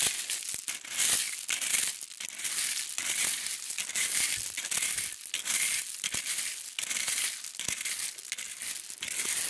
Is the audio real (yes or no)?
yes